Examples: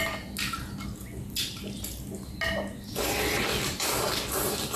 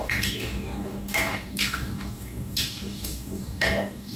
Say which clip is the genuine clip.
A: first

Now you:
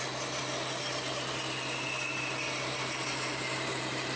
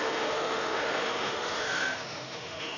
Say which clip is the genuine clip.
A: first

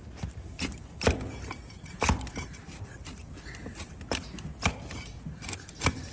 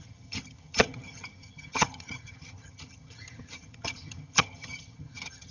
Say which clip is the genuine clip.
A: first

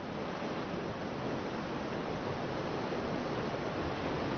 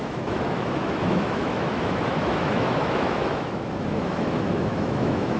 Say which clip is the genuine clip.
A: first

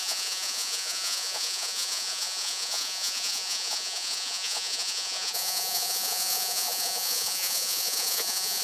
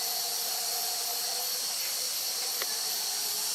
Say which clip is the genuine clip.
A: second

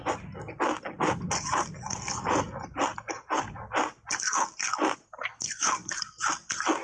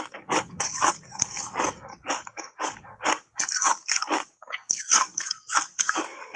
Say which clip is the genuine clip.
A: first